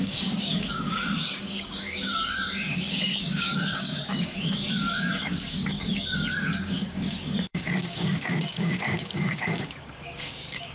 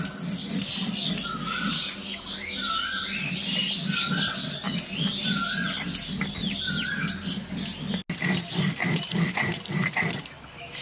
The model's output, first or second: first